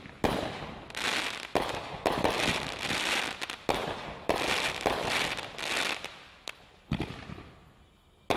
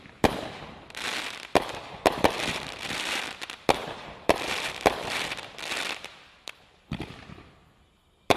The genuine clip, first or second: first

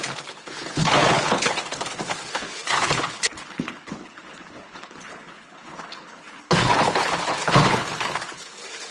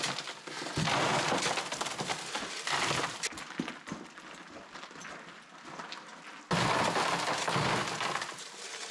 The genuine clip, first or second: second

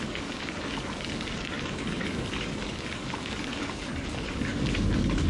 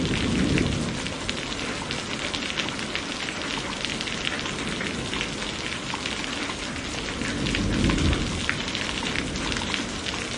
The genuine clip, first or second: second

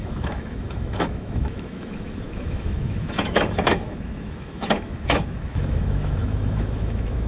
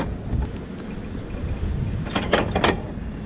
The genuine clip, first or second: second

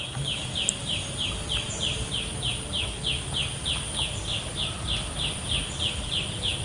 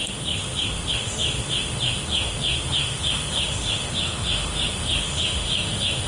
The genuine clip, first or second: first